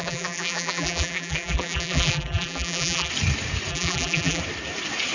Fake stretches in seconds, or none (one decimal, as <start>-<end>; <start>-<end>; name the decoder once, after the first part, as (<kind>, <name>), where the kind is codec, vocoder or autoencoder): 0.0-3.1 (vocoder, BigVGAN v2); 3.7-4.4